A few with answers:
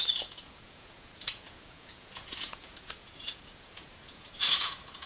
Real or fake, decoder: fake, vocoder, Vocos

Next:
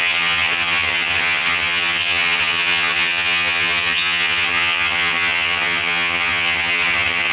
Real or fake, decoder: fake, vocoder, HiFi-GAN